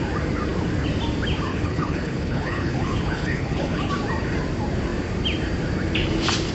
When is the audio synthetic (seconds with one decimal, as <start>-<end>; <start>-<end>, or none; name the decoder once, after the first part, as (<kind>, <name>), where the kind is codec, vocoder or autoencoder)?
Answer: 1.5-3.9 (codec, HILCodec)